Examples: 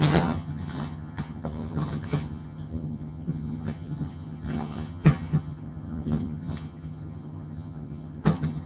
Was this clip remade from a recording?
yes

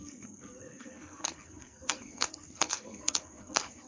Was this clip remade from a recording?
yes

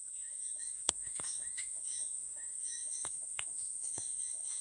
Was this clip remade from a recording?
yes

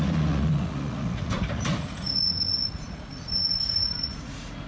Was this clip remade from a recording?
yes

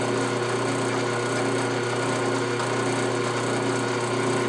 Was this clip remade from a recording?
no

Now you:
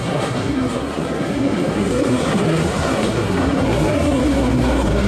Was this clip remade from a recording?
yes